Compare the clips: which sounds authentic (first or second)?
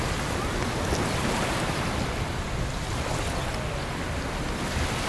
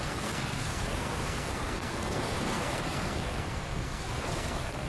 first